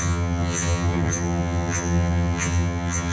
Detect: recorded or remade remade